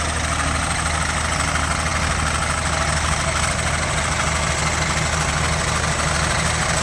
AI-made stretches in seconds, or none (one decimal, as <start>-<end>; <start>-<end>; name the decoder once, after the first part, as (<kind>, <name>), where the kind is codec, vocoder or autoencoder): none